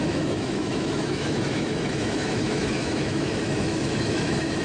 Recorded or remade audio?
remade